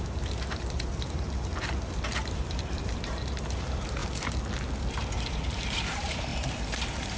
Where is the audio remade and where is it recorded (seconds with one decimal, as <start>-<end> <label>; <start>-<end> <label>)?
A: 0.0-1.5 remade; 1.5-2.2 recorded; 2.2-4.0 remade; 4.0-5.3 recorded; 5.3-7.2 remade